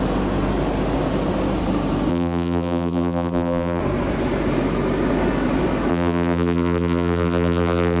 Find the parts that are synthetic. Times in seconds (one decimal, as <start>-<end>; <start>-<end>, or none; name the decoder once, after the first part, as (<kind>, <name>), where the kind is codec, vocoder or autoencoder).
2.1-3.8 (vocoder, BigVGAN v2); 5.9-8.0